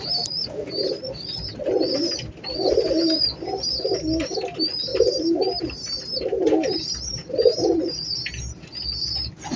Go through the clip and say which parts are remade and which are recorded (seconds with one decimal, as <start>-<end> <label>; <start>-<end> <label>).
0.0-4.9 recorded; 4.9-7.8 remade; 7.8-9.6 recorded